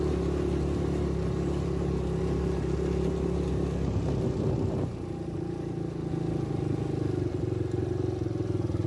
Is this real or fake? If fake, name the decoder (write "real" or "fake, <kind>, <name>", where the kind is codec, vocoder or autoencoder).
real